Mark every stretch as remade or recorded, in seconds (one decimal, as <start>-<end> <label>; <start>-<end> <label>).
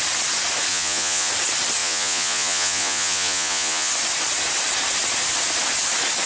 0.0-0.7 recorded; 0.7-1.3 remade; 1.3-1.8 recorded; 1.8-3.9 remade; 3.9-6.3 recorded